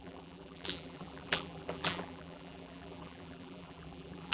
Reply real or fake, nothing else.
fake